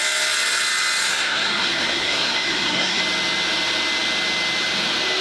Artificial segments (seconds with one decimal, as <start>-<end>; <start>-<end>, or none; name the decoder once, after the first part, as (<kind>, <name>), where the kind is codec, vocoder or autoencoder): 1.1-3.0 (codec, SNAC)